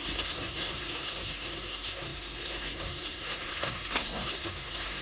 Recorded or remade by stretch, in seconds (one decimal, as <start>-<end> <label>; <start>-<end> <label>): 0.0-5.0 remade